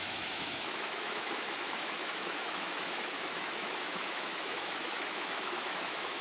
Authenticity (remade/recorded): remade